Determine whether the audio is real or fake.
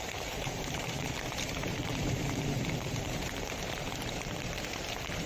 fake